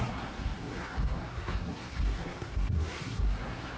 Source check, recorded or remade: remade